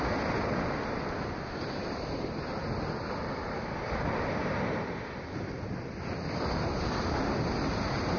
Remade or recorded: recorded